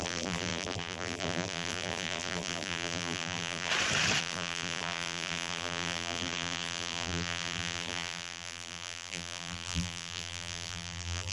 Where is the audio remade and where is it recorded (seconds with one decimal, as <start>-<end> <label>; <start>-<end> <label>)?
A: 0.0-3.7 remade; 3.7-4.2 recorded; 4.2-11.3 remade